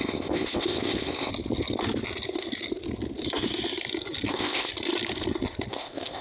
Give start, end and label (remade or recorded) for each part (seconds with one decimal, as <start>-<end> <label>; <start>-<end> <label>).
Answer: 0.0-1.3 remade; 1.3-4.3 recorded; 4.3-4.7 remade; 4.7-5.7 recorded; 5.7-6.2 remade